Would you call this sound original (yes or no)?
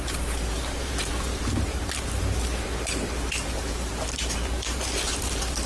no